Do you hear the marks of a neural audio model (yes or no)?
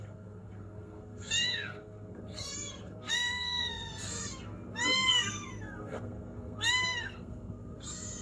yes